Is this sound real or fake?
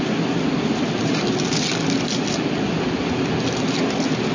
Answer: real